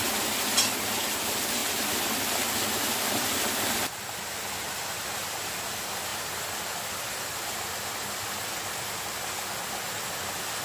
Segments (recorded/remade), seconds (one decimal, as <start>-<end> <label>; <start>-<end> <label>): 0.0-10.6 recorded